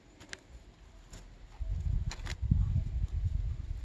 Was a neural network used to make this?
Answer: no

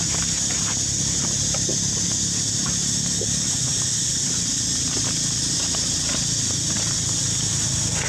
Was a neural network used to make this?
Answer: no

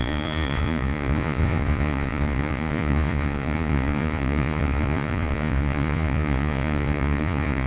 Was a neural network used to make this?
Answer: yes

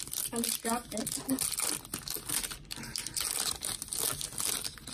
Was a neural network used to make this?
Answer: no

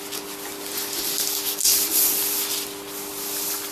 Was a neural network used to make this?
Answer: no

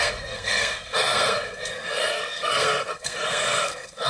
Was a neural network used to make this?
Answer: yes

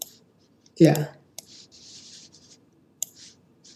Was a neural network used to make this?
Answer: yes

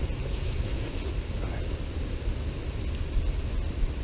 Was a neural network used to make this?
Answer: no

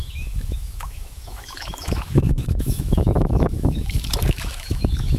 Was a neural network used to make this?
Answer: yes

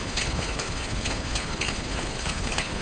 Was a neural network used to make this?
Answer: yes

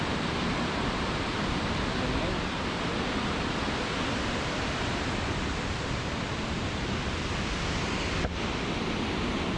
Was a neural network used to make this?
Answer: no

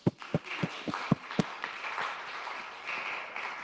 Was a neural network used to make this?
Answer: no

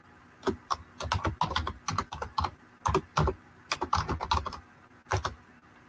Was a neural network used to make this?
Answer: no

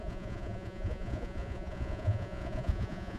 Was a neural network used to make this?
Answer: yes